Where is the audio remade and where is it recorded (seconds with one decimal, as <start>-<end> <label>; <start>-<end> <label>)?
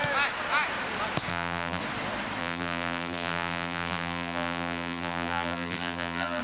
0.0-1.3 recorded; 1.3-1.8 remade; 1.8-2.4 recorded; 2.4-6.4 remade